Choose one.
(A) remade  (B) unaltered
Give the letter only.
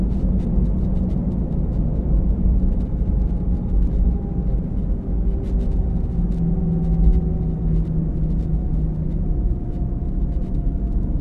B